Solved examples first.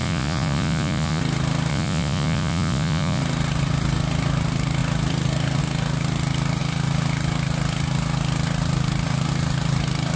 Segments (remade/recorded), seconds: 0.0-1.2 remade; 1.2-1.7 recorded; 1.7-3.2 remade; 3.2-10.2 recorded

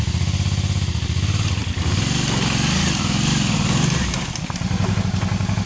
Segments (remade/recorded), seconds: 0.0-5.7 recorded

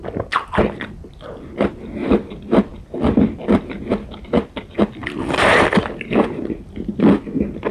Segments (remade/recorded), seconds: 0.0-7.7 recorded